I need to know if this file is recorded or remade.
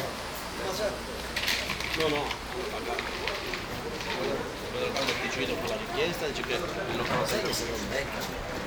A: recorded